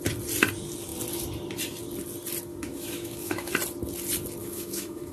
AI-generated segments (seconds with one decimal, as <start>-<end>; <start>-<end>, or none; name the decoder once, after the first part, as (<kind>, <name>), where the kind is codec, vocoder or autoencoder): 2.5-3.5 (autoencoder, DAC-VAE); 4.4-5.1